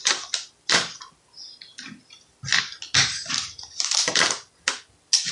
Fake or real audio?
real